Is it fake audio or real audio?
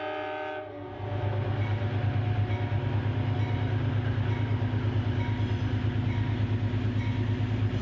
real